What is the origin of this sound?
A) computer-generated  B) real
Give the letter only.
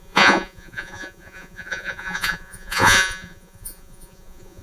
A